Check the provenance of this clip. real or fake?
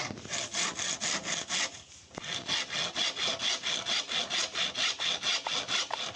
real